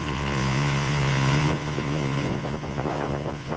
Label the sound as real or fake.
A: fake